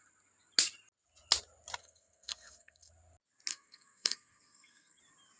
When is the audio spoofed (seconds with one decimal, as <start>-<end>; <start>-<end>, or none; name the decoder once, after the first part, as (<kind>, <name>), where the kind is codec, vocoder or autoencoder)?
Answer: 1.8-2.9 (codec, SNAC); 3.5-5.0

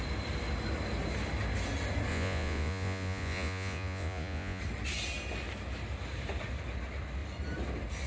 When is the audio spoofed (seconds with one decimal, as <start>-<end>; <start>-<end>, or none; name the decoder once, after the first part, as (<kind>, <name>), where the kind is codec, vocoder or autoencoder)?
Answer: 2.1-4.6 (vocoder, Vocos)

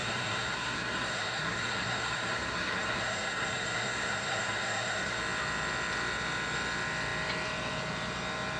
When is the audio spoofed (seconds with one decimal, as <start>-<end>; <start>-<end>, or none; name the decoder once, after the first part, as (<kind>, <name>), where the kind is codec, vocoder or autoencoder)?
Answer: 0.0-5.2 (codec, SNAC)

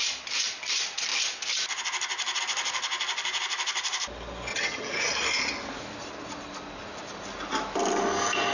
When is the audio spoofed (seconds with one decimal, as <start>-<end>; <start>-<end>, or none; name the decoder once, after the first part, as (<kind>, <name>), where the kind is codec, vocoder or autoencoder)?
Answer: 4.5-5.1 (vocoder, HiFi-GAN)

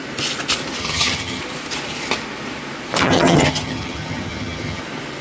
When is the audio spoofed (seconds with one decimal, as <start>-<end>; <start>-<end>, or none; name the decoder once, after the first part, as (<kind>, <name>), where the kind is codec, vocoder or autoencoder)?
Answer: 0.8-1.4 (vocoder, HiFi-GAN); 3.0-4.8

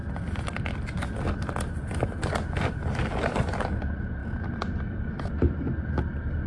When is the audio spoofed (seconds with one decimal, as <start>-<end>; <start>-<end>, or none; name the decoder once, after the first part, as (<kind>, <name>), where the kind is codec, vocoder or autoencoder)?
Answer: 0.0-2.8 (vocoder, BigVGAN v2); 4.2-5.9

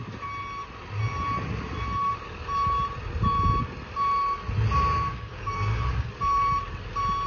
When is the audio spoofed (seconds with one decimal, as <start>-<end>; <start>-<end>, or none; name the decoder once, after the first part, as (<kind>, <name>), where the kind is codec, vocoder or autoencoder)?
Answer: 5.1-6.1 (codec, DAC)

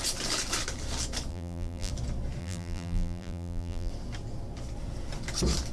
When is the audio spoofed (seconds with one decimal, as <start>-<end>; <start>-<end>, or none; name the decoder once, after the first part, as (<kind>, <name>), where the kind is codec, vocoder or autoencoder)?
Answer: 1.3-1.9 (vocoder, BigVGAN v2); 2.4-3.9